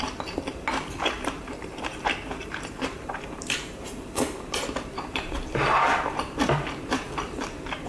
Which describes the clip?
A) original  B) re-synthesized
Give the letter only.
B